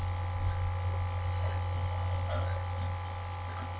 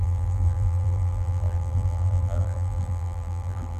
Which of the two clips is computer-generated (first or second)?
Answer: second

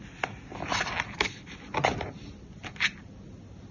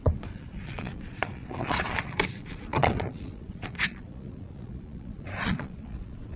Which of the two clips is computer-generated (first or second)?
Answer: second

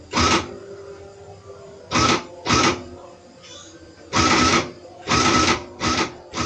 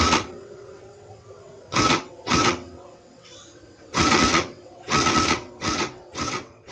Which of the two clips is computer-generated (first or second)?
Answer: second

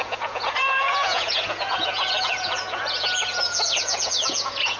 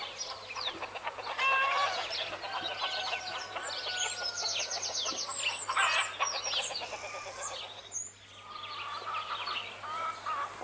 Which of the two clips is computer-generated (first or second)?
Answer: first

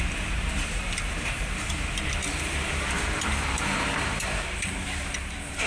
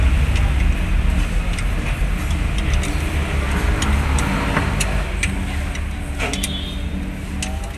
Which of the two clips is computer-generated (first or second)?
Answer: first